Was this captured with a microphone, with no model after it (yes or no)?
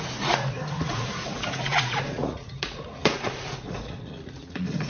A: no